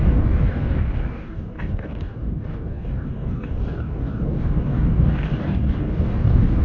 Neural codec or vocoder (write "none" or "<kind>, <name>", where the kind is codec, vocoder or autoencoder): codec, DAC